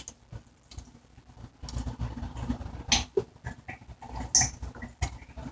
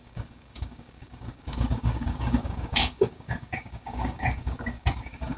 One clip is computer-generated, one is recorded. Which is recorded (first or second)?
first